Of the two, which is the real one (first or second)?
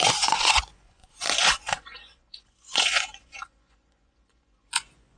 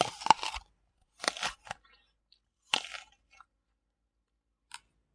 second